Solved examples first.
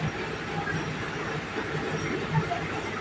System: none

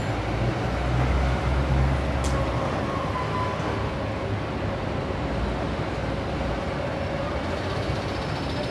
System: none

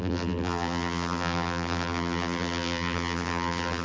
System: vocoder, BigVGAN v2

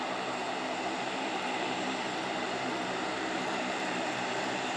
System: vocoder, BigVGAN v2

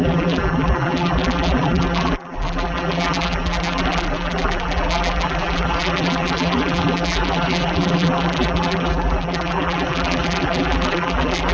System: vocoder, BigVGAN v2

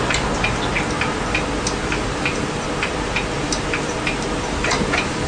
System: vocoder, BigVGAN v2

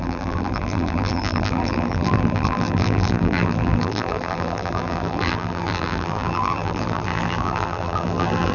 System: vocoder, BigVGAN v2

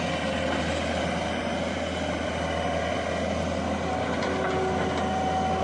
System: none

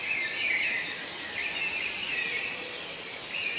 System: vocoder, BigVGAN v2